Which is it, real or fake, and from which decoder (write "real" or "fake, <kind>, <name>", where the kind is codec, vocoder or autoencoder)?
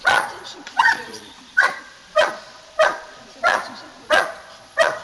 fake, vocoder, Vocos